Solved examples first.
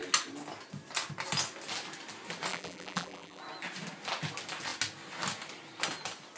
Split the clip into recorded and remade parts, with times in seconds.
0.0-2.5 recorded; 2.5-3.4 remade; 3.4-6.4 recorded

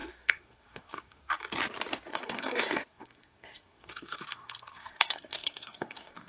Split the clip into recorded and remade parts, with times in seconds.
0.0-1.2 remade; 1.2-2.1 recorded; 2.1-6.3 remade

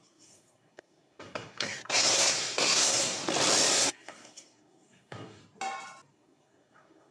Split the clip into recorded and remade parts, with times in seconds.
0.0-3.2 remade; 3.2-3.7 recorded; 3.7-5.4 remade; 5.4-6.1 recorded; 6.1-7.1 remade

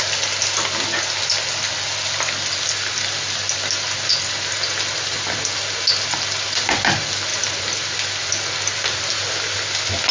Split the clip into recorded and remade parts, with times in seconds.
0.0-10.1 recorded